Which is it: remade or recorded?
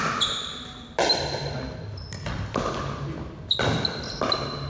recorded